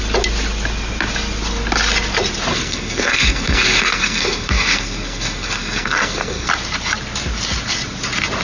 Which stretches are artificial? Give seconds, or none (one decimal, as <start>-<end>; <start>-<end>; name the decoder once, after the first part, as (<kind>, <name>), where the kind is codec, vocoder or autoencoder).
2.5-6.5 (codec, SNAC)

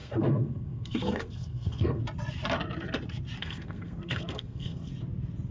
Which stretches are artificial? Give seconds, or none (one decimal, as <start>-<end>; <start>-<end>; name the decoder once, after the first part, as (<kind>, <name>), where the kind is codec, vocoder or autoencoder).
0.0-2.0 (codec, SNAC); 3.4-4.9

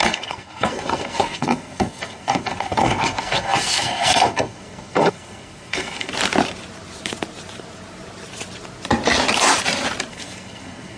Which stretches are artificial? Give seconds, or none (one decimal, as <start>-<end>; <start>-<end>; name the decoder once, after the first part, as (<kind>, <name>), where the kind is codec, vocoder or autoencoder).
0.0-6.1 (codec, SNAC); 10.1-11.0

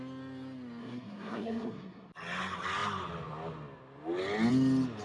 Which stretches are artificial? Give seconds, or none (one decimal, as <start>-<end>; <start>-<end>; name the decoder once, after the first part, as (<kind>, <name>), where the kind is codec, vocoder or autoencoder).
0.8-2.1 (codec, SNAC)

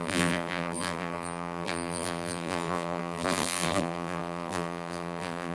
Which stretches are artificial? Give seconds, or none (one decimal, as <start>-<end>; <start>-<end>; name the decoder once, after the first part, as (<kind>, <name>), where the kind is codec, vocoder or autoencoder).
0.0-5.5 (vocoder, BigVGAN v2)